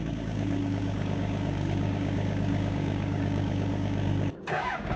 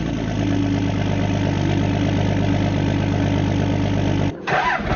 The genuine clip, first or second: second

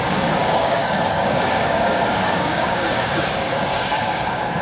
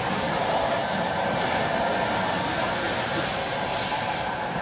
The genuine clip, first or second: second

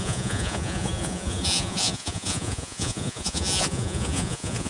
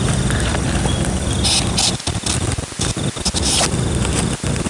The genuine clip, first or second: second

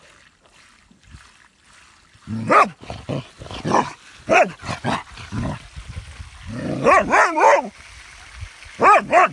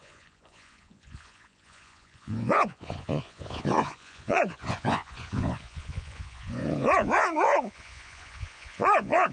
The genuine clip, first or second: first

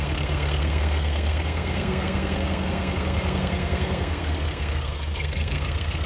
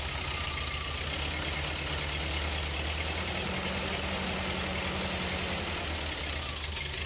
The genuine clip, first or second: second